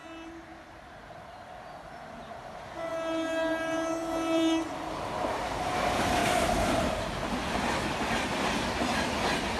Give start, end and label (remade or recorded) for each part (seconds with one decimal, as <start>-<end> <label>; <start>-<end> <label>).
0.0-9.6 recorded